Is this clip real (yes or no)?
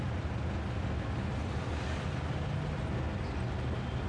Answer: yes